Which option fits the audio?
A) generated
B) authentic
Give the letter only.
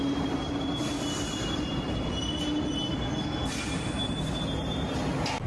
B